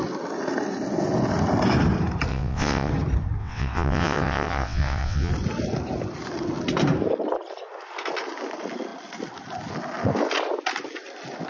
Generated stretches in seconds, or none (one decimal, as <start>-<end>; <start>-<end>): 2.3-2.9; 3.4-5.3